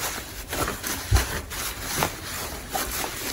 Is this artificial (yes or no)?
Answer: no